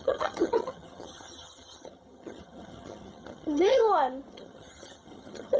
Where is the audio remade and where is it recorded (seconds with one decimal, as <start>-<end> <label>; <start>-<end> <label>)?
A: 0.0-3.8 remade; 3.8-4.3 recorded; 4.3-5.6 remade